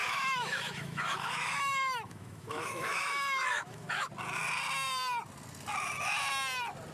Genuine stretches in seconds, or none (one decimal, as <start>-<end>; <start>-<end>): 4.1-6.9